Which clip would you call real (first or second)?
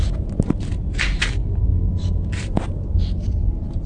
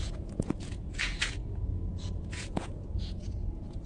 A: first